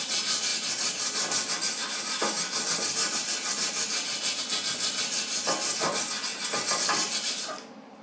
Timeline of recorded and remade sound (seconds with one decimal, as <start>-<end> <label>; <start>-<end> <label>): 0.0-8.0 recorded